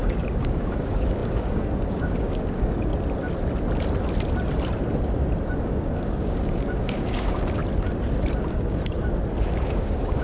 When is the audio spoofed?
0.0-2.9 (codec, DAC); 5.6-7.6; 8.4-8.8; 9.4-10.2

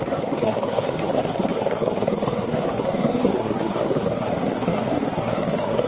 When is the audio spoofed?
0.0-5.9 (codec, SNAC)

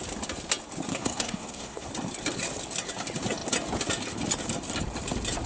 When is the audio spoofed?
0.9-1.9 (codec, SNAC)

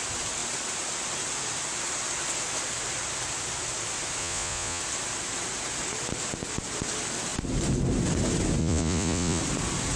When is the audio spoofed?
4.2-4.8 (vocoder, Vocos); 8.6-9.4

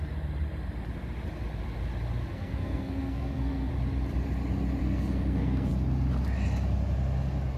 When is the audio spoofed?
2.3-3.7 (codec, SNAC); 4.8-5.7

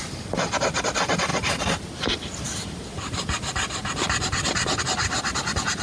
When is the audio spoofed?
none